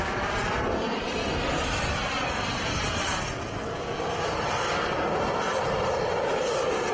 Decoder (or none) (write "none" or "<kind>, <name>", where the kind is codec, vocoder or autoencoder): none